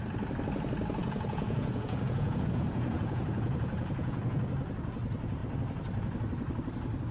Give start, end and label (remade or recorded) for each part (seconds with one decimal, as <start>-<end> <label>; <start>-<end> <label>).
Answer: 0.0-1.0 recorded; 1.0-4.4 remade; 4.4-7.1 recorded